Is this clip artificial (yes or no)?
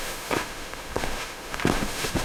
yes